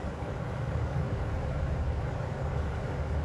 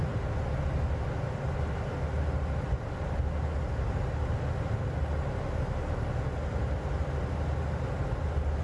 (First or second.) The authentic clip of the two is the second